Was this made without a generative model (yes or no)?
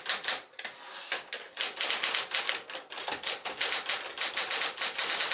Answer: yes